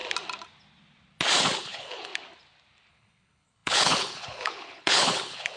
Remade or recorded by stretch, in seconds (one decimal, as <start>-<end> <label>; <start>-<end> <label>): 0.0-1.6 recorded; 1.6-2.1 remade; 2.1-2.9 recorded; 2.9-5.6 remade